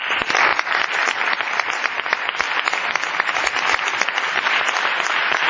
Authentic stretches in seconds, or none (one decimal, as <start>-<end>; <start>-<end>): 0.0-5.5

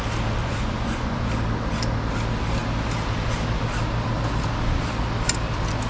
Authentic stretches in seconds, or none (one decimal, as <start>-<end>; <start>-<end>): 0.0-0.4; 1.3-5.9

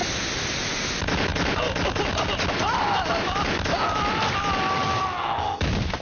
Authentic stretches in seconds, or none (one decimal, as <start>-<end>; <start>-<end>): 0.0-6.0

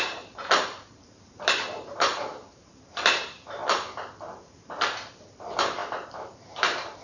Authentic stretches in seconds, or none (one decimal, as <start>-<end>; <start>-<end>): 3.6-4.3

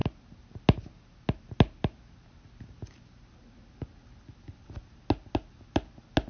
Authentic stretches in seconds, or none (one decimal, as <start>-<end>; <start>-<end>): 0.0-6.3

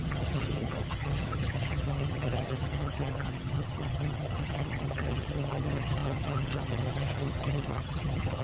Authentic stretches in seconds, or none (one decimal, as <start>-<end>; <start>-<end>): none

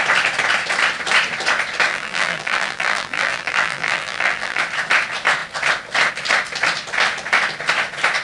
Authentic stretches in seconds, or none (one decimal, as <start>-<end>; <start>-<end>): 0.0-1.9; 4.6-8.2

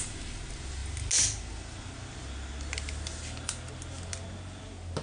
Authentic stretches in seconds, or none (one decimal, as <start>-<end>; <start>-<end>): 0.0-5.0